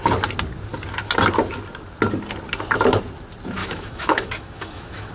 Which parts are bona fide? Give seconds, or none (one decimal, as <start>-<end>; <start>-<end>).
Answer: 0.0-3.6

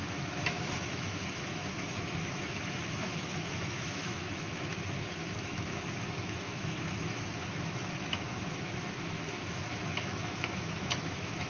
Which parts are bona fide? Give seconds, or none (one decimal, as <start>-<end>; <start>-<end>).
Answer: none

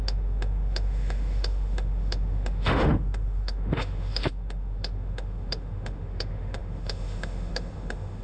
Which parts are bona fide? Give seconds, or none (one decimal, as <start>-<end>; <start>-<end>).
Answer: none

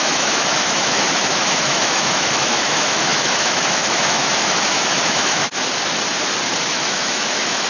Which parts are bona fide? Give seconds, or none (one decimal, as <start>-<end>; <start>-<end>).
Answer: 5.4-6.6

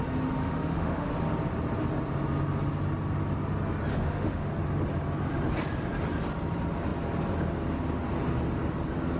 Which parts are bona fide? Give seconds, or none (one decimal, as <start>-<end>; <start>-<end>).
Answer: 0.0-0.4; 1.1-3.9; 4.5-9.2

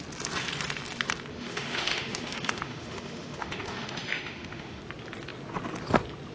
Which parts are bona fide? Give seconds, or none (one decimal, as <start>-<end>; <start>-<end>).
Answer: 0.0-1.3; 4.8-6.3

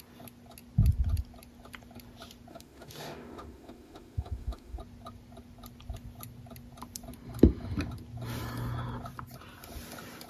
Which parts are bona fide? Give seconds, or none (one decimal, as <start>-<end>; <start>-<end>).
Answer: 0.0-2.5; 4.8-10.3